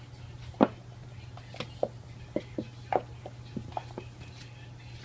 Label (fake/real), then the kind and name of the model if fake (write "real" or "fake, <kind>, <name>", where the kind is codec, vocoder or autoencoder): real